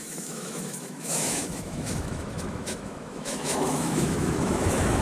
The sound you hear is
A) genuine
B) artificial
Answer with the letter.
B